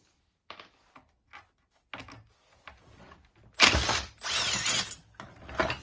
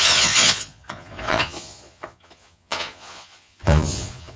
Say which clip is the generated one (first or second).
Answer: second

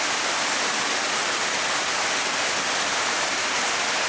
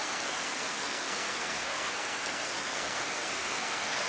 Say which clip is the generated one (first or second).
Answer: second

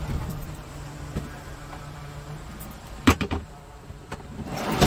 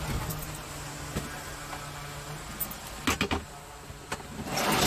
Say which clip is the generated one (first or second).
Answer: first